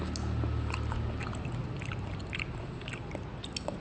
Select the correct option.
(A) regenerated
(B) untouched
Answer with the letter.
B